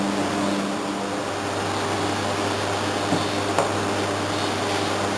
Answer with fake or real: real